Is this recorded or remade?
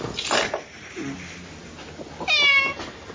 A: recorded